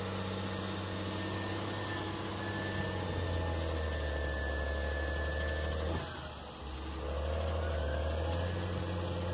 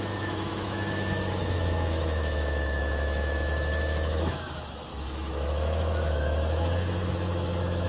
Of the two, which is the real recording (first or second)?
first